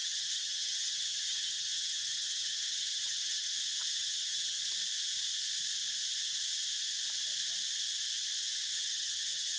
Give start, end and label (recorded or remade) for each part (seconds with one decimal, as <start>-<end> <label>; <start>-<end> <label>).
0.0-3.5 remade; 3.5-4.0 recorded; 4.0-4.6 remade; 4.6-8.7 recorded; 8.7-9.6 remade